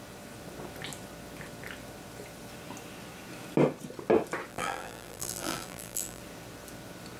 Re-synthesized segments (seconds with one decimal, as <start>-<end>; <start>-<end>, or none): 4.5-6.2